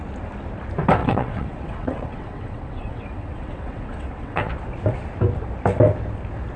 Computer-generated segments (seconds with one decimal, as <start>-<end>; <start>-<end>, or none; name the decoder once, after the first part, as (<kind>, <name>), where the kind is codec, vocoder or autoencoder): 1.0-4.5 (vocoder, WaveNeXt)